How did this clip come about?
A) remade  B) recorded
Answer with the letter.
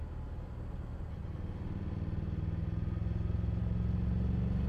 B